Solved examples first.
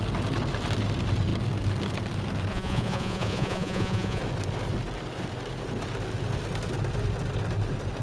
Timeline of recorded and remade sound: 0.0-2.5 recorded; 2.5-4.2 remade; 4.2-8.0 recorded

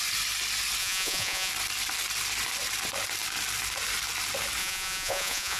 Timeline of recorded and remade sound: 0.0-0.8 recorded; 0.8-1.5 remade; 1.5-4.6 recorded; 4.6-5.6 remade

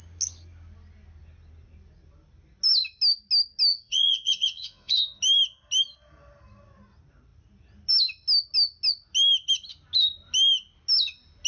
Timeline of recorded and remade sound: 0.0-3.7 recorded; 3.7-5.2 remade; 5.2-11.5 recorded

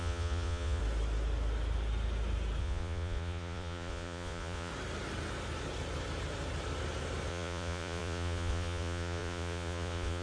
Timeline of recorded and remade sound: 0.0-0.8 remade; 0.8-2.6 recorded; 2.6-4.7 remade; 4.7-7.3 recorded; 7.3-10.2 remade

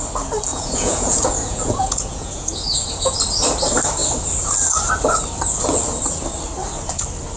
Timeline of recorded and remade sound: 0.0-0.5 recorded; 0.5-3.2 remade; 3.2-7.4 recorded

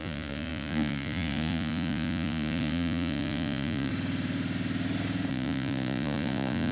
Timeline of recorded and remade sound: 0.0-3.9 remade; 3.9-5.3 recorded; 5.3-6.7 remade

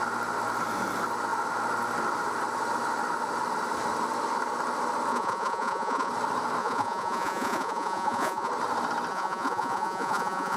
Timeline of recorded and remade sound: 0.0-5.1 recorded; 5.1-6.1 remade; 6.1-6.6 recorded; 6.6-8.5 remade; 8.5-9.1 recorded; 9.1-10.6 remade